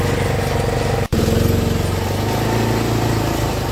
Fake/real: real